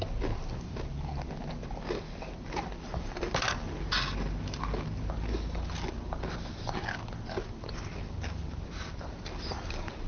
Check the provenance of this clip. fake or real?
real